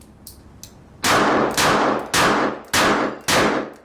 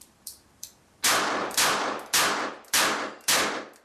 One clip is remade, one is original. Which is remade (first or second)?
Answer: second